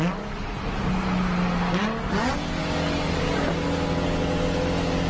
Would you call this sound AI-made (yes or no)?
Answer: no